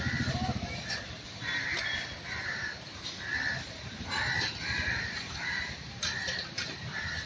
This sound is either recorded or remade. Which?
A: remade